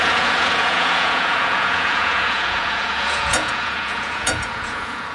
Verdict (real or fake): fake